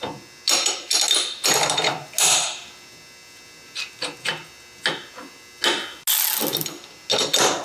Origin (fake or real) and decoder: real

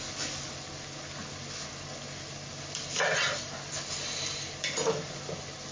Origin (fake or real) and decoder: real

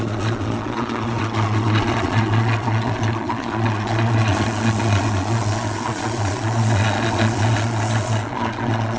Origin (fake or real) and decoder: fake, vocoder, Vocos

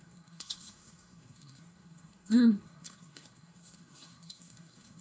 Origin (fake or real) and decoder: fake, codec, SNAC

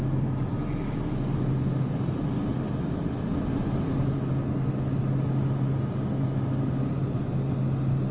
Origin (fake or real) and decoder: real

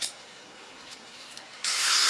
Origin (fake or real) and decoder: fake, codec, SNAC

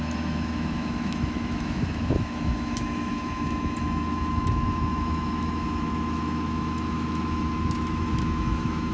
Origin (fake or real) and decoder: fake, autoencoder, DAC-VAE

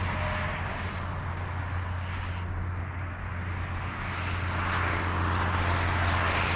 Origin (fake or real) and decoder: real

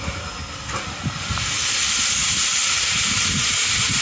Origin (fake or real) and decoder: real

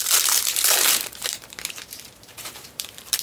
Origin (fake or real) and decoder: fake, vocoder, BigVGAN v2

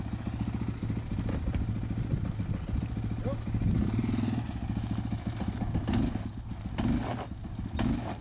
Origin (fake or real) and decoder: real